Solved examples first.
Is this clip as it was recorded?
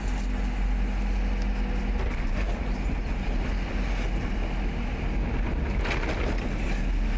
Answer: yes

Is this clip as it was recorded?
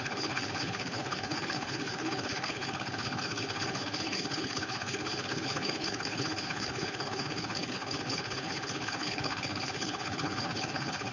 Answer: no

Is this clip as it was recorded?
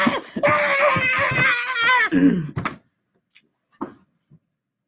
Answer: yes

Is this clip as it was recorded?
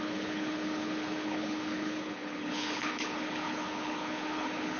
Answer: no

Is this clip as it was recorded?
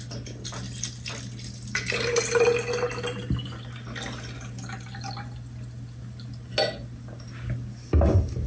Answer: yes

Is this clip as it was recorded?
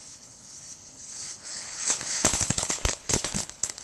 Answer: no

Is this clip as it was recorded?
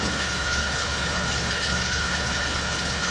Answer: no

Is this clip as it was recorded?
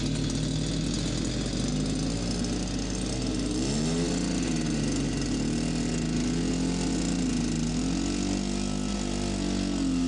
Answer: yes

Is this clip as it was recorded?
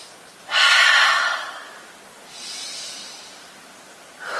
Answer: yes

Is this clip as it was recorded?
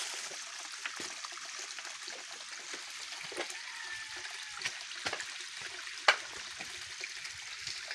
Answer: yes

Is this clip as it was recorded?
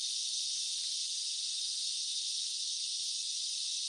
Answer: yes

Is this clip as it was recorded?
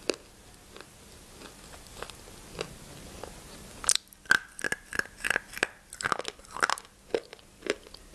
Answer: yes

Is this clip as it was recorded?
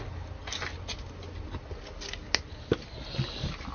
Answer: yes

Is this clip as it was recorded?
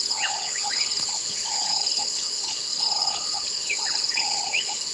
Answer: no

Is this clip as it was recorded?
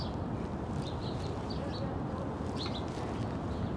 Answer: yes